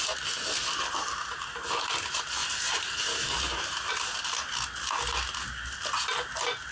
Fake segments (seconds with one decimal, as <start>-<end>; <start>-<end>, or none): 2.4-3.9